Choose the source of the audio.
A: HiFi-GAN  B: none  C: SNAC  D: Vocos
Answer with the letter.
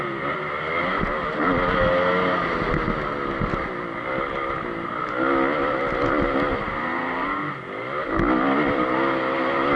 B